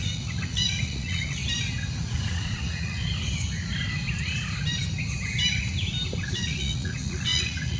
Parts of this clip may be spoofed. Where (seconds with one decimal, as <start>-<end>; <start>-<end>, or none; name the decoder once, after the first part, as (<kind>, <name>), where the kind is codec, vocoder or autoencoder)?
0.0-1.4 (vocoder, Vocos); 1.9-3.0; 6.3-7.8